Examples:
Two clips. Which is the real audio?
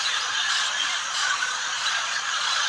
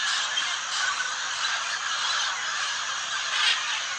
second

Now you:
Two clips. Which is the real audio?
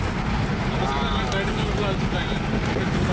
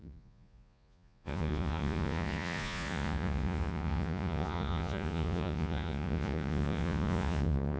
first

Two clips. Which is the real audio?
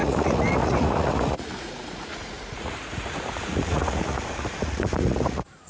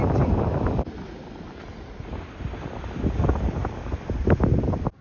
second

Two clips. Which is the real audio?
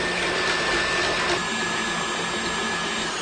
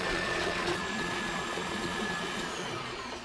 first